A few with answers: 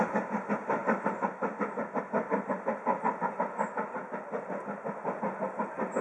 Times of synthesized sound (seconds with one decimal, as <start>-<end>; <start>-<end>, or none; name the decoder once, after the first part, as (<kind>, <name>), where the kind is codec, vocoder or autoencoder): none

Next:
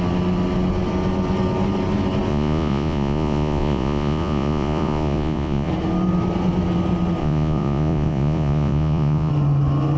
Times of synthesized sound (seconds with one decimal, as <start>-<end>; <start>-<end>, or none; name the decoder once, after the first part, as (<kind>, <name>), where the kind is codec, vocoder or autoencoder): 2.3-5.7 (vocoder, Vocos); 7.2-9.3

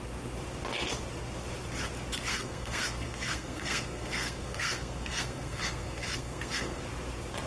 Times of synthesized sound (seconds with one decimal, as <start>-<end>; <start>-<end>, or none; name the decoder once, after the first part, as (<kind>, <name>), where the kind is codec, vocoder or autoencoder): 2.3-6.8 (codec, SNAC)

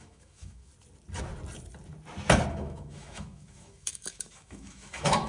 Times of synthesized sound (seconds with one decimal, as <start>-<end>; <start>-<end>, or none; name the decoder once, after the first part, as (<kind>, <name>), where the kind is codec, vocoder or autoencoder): 0.0-0.7 (autoencoder, DAC-VAE); 2.5-5.3

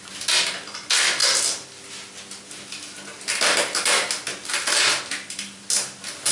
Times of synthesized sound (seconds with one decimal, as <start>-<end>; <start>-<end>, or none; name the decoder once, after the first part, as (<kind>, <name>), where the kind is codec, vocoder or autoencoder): none

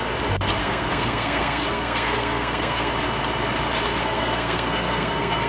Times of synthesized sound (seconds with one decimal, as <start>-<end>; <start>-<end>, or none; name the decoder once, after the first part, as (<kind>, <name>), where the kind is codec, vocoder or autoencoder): 0.6-2.9 (codec, SNAC); 4.0-5.5

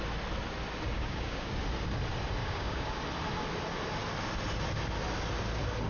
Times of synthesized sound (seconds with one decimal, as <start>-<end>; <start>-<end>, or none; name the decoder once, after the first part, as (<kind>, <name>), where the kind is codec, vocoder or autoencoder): 0.9-1.5 (codec, DAC); 2.4-3.0

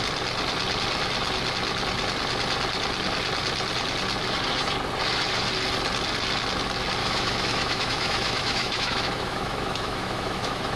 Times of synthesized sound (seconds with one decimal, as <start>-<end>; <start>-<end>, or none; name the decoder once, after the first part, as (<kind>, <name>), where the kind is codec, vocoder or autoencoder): 7.0-10.8 (autoencoder, DAC-VAE)